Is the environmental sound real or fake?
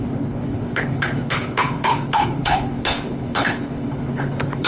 fake